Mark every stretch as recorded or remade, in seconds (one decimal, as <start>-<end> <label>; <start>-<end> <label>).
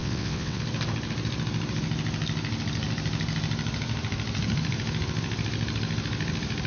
0.0-0.6 remade; 0.6-6.7 recorded